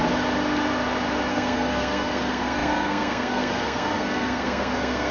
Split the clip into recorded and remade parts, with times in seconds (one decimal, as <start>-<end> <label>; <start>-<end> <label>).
0.0-1.3 recorded; 1.3-5.1 remade